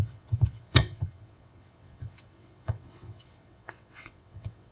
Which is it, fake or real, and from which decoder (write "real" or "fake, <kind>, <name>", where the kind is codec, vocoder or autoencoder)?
fake, vocoder, WaveNeXt